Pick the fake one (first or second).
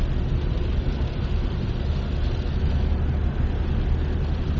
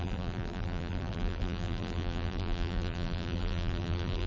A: second